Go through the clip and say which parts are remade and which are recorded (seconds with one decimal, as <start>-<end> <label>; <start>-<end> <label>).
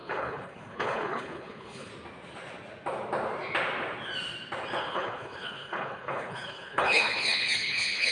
0.0-1.9 remade; 1.9-4.8 recorded; 4.8-8.1 remade